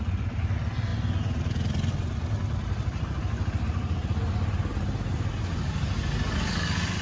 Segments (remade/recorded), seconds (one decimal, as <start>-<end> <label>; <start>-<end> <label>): 0.0-7.0 recorded